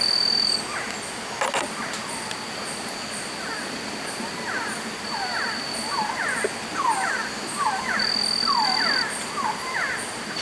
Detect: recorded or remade recorded